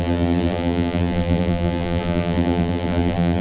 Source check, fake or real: fake